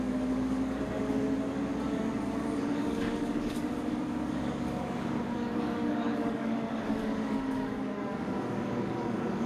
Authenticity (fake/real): fake